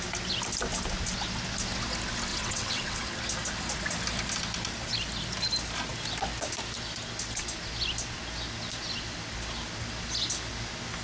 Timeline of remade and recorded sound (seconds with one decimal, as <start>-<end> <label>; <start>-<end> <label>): 0.0-2.3 recorded; 2.3-3.0 remade; 3.0-11.0 recorded